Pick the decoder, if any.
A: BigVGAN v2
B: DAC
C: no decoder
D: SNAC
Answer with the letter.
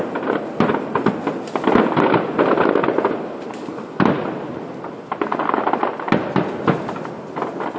C